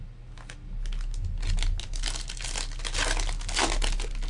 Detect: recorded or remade recorded